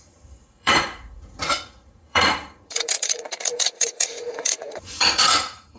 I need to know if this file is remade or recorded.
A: remade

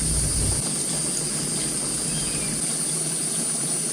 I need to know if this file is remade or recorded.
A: recorded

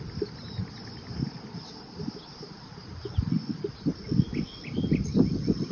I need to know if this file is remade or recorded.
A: recorded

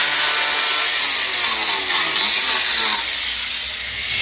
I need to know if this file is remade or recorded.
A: recorded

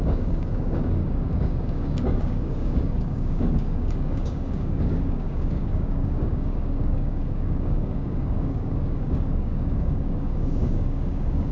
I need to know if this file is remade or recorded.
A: remade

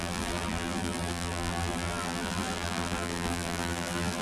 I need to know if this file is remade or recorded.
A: remade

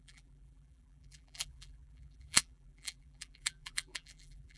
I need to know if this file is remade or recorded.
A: remade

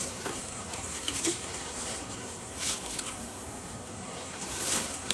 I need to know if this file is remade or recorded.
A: remade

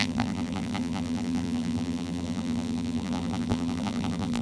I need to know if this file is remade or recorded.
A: remade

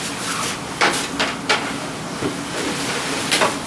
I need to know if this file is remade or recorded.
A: recorded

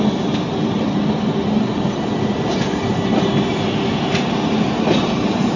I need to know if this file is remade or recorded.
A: recorded